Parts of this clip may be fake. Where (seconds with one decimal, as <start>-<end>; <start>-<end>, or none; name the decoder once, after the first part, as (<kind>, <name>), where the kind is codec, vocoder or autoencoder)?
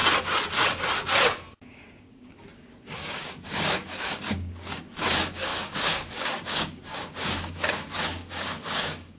1.5-9.2 (codec, DAC)